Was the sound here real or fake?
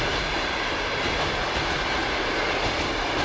real